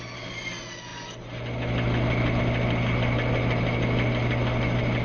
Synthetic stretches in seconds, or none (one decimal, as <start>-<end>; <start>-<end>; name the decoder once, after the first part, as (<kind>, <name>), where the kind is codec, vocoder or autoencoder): none